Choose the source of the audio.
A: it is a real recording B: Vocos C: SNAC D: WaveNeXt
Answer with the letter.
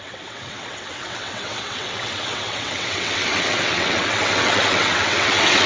D